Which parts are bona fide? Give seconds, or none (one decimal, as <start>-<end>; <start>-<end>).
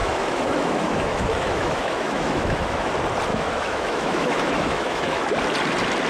2.9-3.3; 5.2-6.1